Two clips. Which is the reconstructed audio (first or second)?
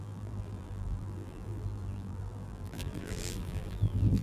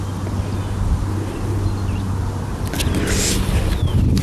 first